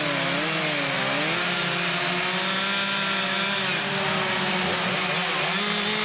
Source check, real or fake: real